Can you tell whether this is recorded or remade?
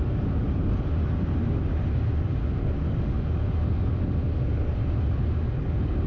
recorded